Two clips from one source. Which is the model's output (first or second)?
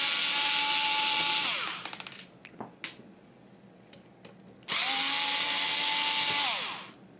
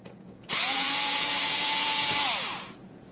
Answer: second